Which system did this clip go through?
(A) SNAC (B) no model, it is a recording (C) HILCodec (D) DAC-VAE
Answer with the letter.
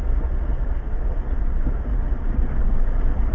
B